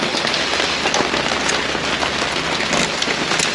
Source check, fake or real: real